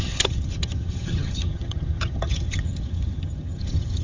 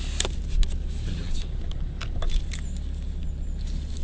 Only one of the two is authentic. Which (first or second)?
second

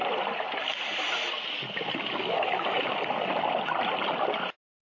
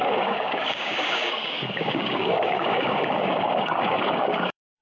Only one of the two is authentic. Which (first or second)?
first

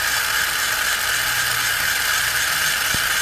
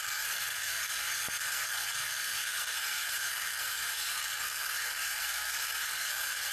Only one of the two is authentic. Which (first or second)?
first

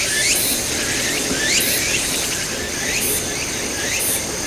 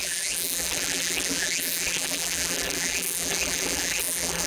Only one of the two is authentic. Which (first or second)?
first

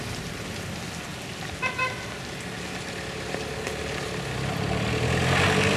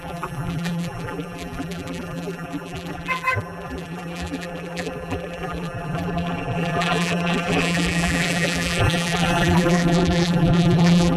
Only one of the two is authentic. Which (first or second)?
first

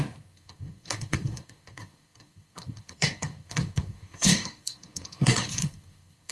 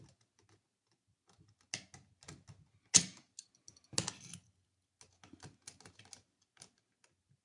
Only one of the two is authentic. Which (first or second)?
second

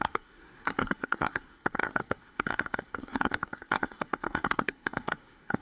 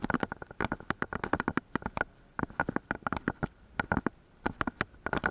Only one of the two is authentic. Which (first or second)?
second